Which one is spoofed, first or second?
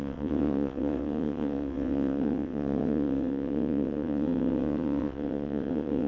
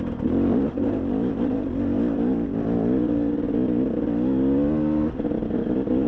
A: first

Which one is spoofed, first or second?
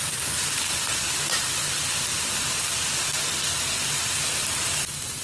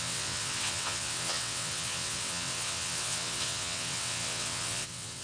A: second